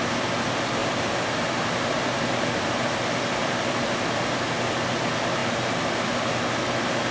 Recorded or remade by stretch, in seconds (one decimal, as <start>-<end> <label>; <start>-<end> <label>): 0.0-0.8 recorded; 0.8-4.2 remade; 4.2-7.1 recorded